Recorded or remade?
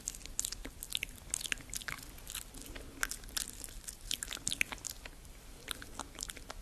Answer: recorded